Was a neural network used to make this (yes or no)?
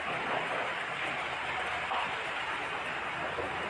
no